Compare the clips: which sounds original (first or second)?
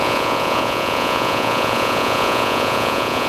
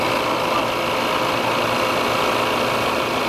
second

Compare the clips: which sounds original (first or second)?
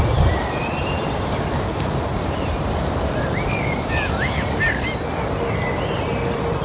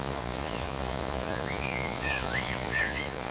first